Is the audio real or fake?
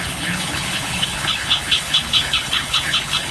fake